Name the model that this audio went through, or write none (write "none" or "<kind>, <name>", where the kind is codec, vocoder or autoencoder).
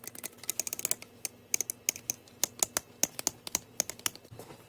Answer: none